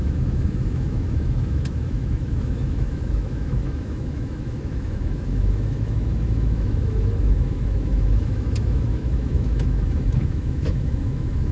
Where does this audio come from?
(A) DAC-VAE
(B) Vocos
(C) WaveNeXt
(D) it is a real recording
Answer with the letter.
A